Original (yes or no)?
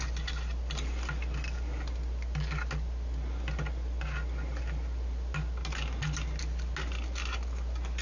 yes